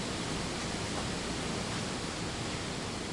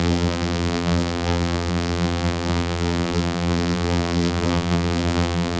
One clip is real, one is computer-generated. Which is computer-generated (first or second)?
second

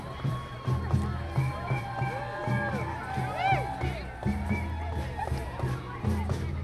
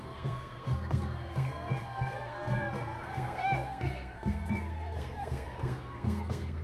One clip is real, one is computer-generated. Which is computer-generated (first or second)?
second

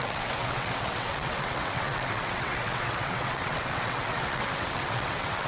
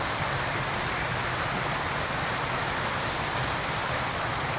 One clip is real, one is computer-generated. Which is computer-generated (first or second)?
first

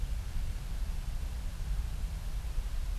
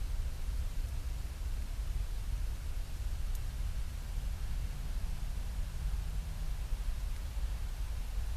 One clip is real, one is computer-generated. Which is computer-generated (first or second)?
first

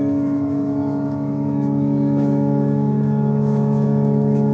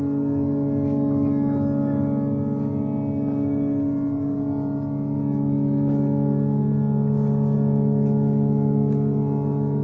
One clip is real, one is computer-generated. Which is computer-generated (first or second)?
first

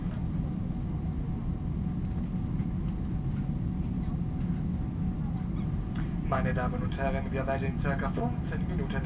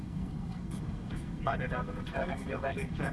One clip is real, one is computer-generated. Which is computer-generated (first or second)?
second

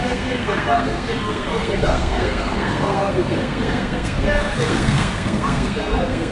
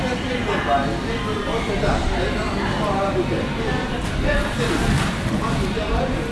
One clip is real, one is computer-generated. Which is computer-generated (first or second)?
first